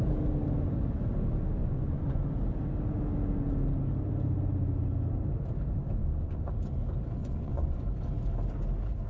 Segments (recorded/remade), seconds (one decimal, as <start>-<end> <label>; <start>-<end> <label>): 0.0-1.6 recorded; 1.6-2.2 remade; 2.2-6.0 recorded; 6.0-6.5 remade; 6.5-7.2 recorded; 7.2-7.8 remade; 7.8-9.1 recorded